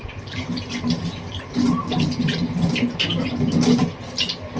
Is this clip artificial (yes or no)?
no